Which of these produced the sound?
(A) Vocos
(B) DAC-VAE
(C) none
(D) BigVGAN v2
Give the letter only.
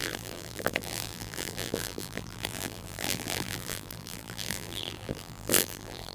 D